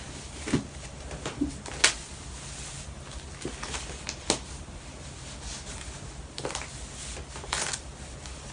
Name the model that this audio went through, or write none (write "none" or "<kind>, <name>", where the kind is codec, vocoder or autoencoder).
none